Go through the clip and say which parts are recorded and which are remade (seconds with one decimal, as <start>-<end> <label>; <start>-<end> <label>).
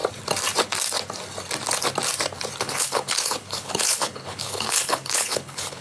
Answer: 0.0-2.6 recorded; 2.6-5.8 remade